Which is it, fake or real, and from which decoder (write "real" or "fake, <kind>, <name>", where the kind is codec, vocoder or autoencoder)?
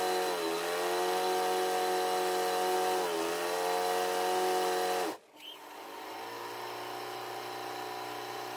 real